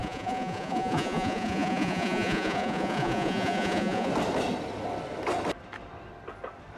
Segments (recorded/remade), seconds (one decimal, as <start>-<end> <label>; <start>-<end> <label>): 0.0-4.1 remade; 4.1-6.8 recorded